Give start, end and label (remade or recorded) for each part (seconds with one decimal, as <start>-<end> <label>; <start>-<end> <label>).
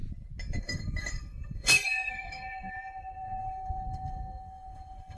0.0-0.6 recorded; 0.6-5.2 remade